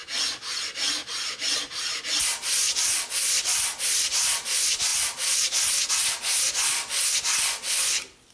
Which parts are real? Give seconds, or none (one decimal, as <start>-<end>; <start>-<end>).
0.0-8.3